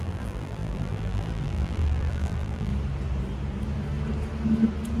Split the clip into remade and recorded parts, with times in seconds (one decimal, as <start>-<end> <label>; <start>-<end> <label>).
0.0-2.7 remade; 2.7-5.0 recorded